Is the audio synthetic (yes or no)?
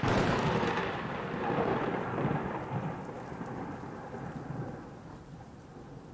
yes